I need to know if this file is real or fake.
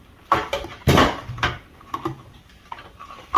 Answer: fake